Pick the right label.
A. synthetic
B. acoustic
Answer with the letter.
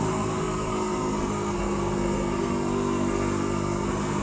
A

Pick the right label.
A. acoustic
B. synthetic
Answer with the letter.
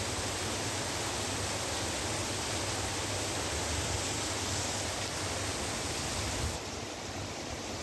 A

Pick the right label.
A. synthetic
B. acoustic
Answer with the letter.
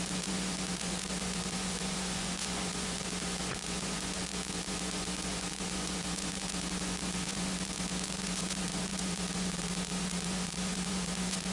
A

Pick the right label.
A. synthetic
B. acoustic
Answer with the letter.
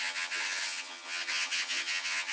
A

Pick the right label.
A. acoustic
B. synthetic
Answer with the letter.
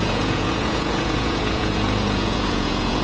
B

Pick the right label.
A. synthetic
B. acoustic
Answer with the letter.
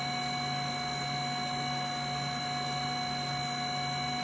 B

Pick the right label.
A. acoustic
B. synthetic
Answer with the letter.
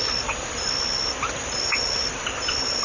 A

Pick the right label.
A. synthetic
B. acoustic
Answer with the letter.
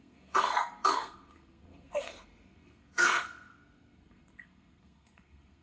A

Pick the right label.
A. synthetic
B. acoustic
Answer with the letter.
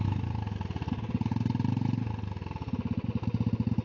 B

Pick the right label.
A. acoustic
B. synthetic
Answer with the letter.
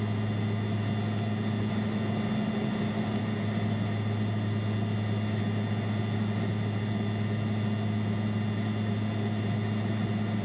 A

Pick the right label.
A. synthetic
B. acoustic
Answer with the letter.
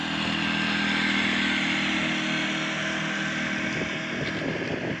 B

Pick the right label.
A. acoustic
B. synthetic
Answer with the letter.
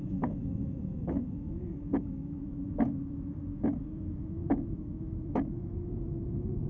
B